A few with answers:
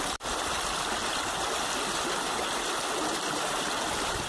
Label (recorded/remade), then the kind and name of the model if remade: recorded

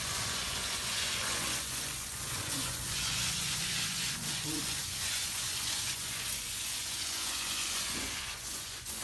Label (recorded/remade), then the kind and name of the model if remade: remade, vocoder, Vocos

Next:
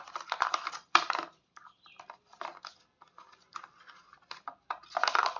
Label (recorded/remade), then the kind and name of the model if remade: remade, vocoder, BigVGAN v2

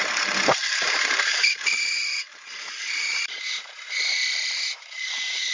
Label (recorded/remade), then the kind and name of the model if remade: remade, vocoder, BigVGAN v2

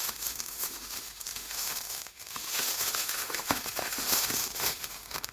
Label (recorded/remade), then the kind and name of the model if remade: remade, autoencoder, DAC-VAE